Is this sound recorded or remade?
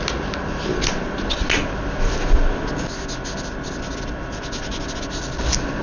recorded